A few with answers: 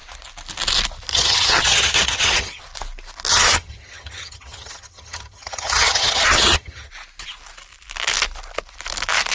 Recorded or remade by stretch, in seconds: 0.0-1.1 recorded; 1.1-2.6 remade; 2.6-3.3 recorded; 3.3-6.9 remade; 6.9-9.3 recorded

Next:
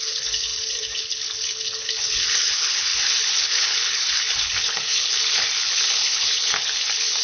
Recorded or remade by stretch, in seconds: 0.0-7.2 remade

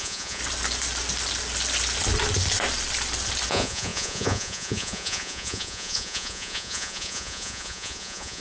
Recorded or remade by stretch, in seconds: 0.0-0.4 remade; 0.4-3.5 recorded; 3.5-8.4 remade

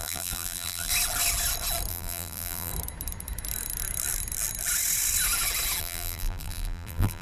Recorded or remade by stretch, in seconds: 0.0-0.9 remade; 0.9-1.9 recorded; 1.9-2.7 remade; 2.7-5.8 recorded; 5.8-7.2 remade

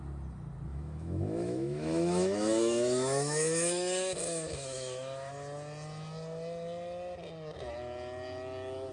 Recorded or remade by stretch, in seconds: 0.0-0.7 recorded; 0.7-5.3 remade; 5.3-8.9 recorded

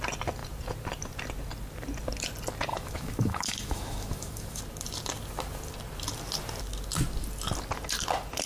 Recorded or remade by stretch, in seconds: 0.0-2.7 recorded; 2.7-4.6 remade; 4.6-8.5 recorded

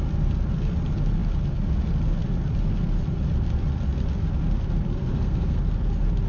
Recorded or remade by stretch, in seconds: 0.0-4.9 recorded; 4.9-5.6 remade; 5.6-6.3 recorded